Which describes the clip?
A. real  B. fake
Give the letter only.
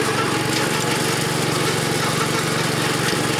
A